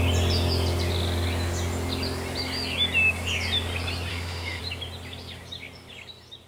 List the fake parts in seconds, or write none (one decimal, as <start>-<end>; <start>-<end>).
4.1-4.6

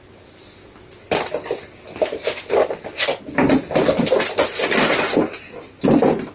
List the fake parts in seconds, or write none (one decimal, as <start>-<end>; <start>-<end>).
none

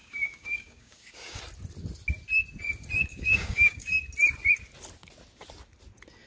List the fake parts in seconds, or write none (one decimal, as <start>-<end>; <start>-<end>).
0.0-1.4; 3.1-4.0

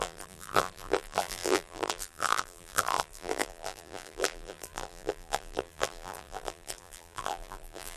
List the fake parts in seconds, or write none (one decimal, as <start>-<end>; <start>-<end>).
0.0-8.0

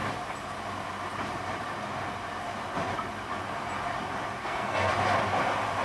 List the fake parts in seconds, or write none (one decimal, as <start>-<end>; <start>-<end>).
4.4-4.9